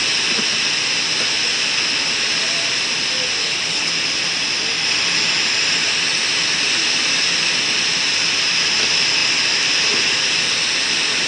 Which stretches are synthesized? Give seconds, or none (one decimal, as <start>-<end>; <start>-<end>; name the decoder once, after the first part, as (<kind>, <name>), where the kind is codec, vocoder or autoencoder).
3.4-3.9 (codec, HILCodec)